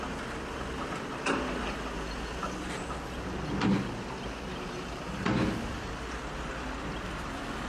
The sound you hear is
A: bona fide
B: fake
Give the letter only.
A